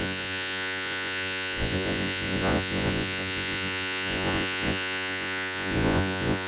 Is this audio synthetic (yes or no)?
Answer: yes